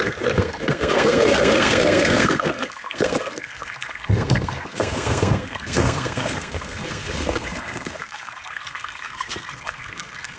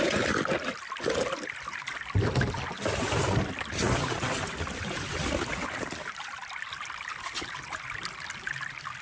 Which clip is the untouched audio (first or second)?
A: second